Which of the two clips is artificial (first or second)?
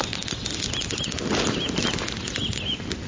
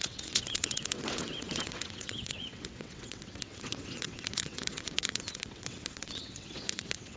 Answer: second